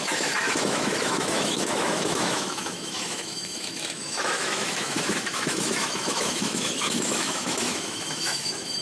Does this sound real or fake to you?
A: fake